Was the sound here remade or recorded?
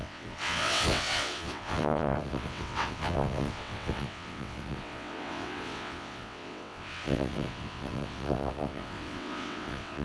remade